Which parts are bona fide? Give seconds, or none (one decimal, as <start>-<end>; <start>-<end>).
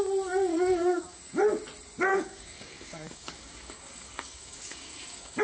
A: 0.0-0.5; 1.2-2.1